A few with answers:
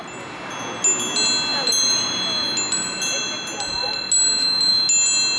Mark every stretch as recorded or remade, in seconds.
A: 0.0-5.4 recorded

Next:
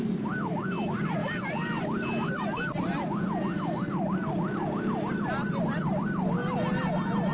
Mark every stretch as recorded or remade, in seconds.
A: 0.0-7.3 recorded

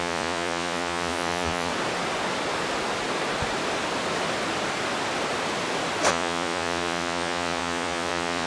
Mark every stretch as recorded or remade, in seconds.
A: 0.0-1.7 remade; 1.7-6.1 recorded; 6.1-8.5 remade

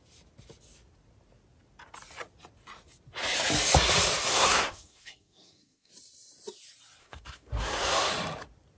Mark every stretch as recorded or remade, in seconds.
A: 0.0-4.3 recorded; 4.3-5.9 remade; 5.9-7.0 recorded; 7.0-8.1 remade; 8.1-8.8 recorded

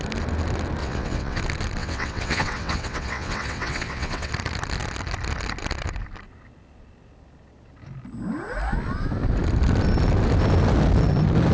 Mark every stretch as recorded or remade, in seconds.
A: 0.0-0.8 recorded; 0.8-1.4 remade; 1.4-1.8 recorded; 1.8-4.3 remade; 4.3-11.5 recorded

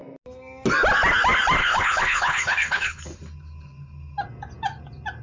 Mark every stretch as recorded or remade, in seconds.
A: 0.0-1.6 recorded; 1.6-3.0 remade; 3.0-5.2 recorded